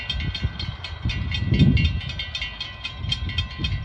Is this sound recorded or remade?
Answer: recorded